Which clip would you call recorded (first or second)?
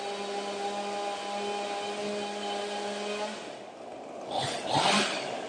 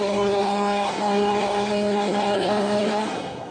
first